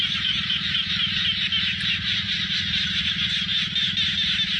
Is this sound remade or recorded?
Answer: recorded